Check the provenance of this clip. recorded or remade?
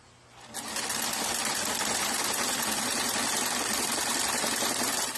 recorded